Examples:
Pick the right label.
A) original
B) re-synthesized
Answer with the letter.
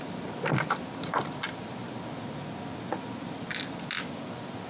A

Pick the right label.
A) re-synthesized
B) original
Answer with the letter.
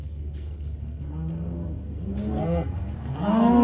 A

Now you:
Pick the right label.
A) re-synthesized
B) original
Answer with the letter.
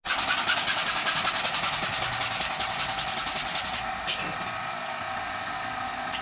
B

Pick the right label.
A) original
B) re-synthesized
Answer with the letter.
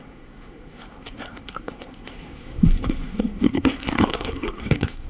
B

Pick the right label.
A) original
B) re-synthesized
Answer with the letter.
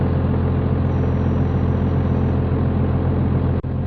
A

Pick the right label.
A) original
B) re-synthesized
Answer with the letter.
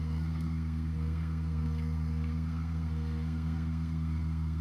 B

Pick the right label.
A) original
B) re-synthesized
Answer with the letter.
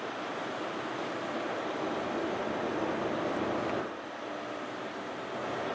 A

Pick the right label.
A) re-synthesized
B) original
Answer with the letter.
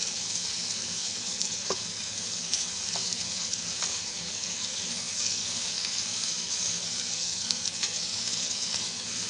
A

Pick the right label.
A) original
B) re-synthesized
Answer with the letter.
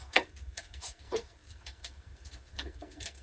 B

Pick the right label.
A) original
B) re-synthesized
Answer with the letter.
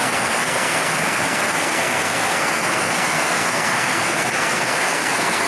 B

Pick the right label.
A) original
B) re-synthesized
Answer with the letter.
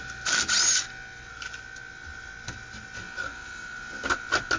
A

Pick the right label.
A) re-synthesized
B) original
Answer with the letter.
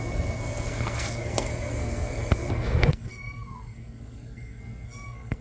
A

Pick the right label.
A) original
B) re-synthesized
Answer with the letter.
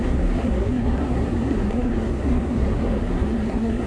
B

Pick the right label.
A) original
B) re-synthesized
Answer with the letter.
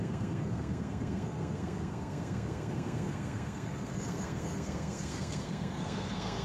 B